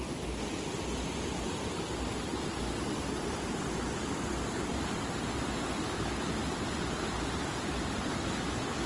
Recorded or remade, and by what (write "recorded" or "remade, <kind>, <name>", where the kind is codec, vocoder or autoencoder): recorded